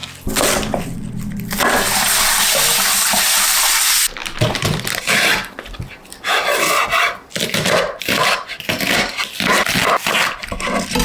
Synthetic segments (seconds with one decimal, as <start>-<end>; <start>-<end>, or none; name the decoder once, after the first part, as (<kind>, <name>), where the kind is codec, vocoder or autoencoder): none